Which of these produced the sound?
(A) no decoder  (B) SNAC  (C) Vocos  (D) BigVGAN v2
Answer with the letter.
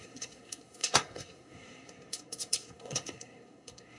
B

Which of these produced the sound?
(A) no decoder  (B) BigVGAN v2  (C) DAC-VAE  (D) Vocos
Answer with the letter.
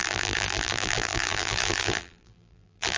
B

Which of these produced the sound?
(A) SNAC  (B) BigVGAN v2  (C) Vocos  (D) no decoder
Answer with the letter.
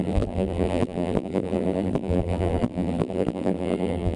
B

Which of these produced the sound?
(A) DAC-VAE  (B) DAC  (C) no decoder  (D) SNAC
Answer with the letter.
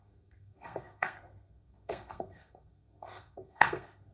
D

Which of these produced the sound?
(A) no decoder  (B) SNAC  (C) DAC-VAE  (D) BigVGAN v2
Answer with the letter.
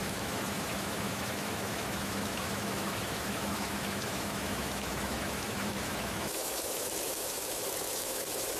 C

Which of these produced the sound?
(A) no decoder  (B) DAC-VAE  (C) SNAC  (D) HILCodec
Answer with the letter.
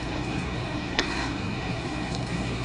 C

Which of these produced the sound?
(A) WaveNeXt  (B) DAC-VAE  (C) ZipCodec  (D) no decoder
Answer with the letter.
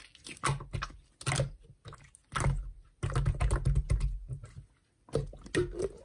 D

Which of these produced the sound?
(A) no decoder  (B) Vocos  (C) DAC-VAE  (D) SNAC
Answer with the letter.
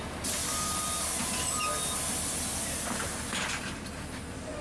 A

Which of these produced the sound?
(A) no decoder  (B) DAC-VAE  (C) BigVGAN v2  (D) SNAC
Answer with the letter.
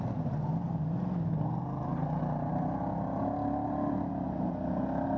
A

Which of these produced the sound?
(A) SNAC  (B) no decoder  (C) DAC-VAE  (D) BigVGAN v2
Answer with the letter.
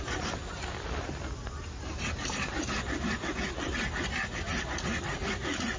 B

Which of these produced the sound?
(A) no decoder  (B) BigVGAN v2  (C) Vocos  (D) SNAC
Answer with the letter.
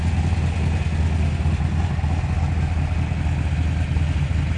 A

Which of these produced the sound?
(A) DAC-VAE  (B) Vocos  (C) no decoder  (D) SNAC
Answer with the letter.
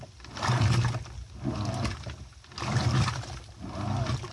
C